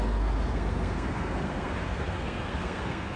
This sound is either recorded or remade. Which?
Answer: remade